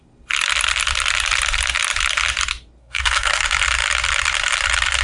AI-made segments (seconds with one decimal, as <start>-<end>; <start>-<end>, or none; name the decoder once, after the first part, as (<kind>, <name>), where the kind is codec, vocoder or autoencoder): 2.8-3.4 (codec, SNAC)